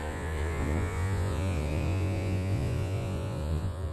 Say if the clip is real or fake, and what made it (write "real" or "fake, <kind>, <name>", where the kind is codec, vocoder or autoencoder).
fake, vocoder, Vocos